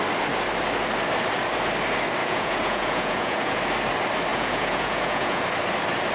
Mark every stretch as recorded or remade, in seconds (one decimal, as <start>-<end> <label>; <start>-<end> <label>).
0.0-2.2 recorded; 2.2-3.6 remade; 3.6-4.3 recorded; 4.3-5.4 remade; 5.4-6.1 recorded